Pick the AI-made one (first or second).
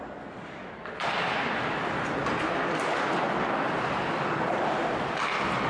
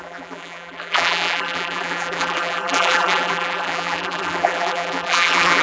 second